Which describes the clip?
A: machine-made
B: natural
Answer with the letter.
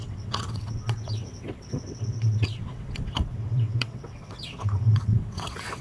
A